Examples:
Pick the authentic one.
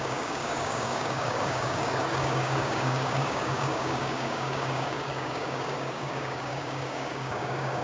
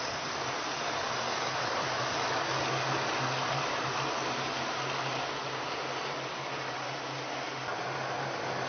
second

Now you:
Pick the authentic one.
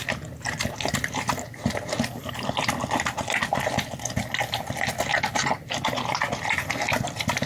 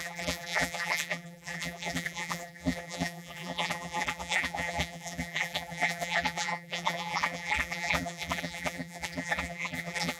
first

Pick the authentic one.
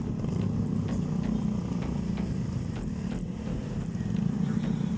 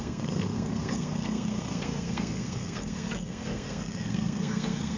first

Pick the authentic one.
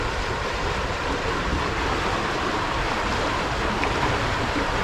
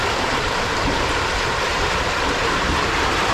first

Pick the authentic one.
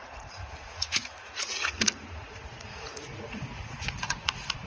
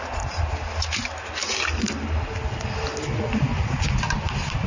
second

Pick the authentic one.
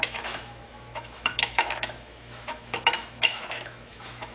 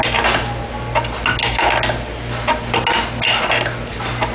second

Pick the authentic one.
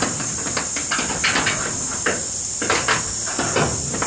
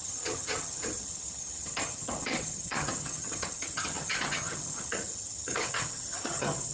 first